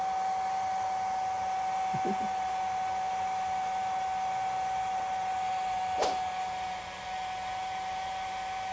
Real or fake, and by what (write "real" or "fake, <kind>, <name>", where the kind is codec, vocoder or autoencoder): real